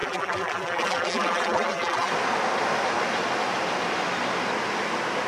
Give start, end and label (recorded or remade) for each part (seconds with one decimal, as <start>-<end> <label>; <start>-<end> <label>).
0.0-2.1 remade; 2.1-5.3 recorded